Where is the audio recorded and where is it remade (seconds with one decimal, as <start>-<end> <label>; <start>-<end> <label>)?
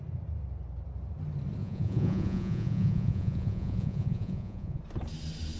0.0-1.6 recorded; 1.6-4.8 remade; 4.8-5.6 recorded